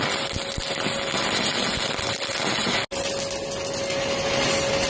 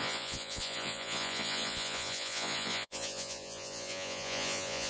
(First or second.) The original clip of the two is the first